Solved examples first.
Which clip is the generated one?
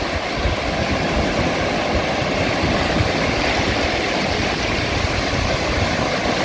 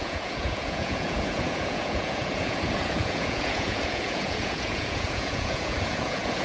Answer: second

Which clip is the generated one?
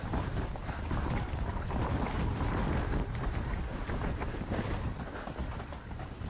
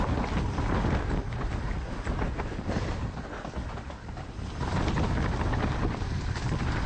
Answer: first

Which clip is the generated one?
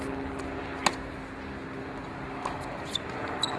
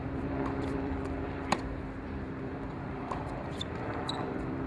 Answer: second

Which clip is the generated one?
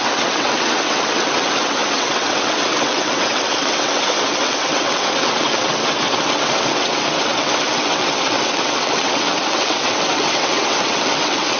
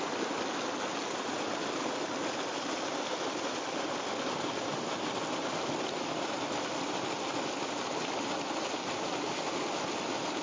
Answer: first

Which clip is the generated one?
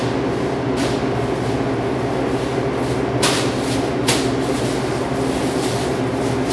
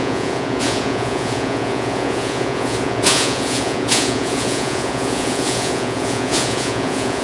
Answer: second